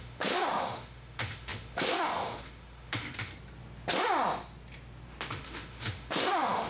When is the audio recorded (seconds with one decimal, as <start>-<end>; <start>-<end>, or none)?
3.3-5.3